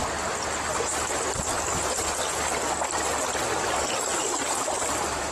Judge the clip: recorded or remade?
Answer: recorded